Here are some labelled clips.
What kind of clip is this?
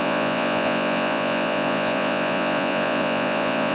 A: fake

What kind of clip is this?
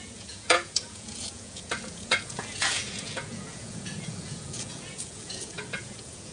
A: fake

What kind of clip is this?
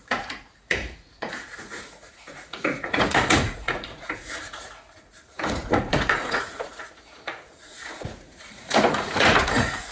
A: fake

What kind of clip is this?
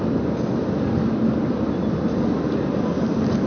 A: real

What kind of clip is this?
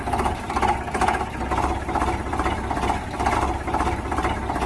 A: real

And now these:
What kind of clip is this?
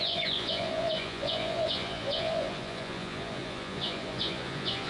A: fake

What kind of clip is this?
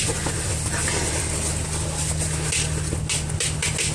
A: real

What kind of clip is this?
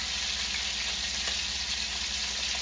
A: real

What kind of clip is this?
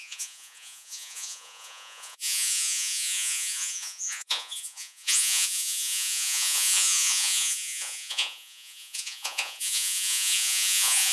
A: fake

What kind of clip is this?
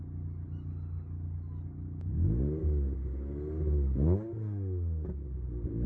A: real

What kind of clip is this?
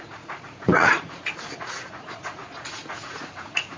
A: fake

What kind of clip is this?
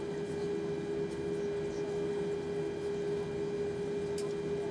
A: real